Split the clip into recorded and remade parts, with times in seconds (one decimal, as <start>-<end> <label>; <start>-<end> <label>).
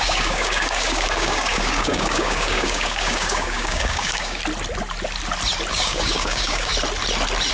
0.0-4.4 remade; 4.4-5.7 recorded; 5.7-6.7 remade; 6.7-7.5 recorded